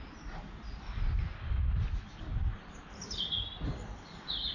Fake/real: real